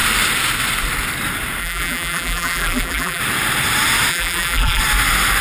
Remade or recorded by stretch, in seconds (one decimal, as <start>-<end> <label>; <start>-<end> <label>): 0.0-1.6 recorded; 1.6-3.2 remade; 3.2-4.1 recorded; 4.1-4.8 remade; 4.8-5.4 recorded